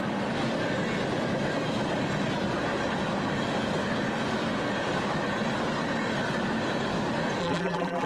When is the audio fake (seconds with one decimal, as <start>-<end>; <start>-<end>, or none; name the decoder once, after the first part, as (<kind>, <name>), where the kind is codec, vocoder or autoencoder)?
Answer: 7.4-8.1 (vocoder, BigVGAN v2)

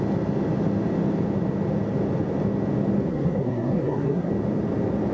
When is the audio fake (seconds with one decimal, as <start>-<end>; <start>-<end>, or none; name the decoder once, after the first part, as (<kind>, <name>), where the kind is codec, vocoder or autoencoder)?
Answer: 3.1-4.3 (codec, SNAC)

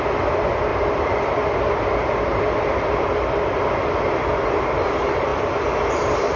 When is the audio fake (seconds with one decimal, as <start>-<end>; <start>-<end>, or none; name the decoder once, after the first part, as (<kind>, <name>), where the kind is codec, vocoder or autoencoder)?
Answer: 0.7-4.1 (vocoder, BigVGAN v2)

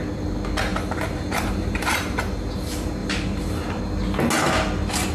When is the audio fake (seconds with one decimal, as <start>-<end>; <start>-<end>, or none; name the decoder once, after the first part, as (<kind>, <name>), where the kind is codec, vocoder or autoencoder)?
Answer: 0.7-2.2 (vocoder, BigVGAN v2); 3.0-3.8

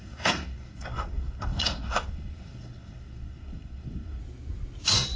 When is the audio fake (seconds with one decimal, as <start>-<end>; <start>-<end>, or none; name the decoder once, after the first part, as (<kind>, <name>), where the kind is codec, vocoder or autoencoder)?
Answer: 0.0-4.2 (codec, SNAC)

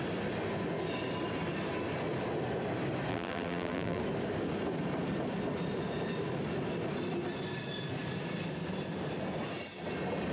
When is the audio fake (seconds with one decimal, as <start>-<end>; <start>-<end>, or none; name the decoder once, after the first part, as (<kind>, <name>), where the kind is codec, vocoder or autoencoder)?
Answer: 3.1-4.0 (vocoder, BigVGAN v2)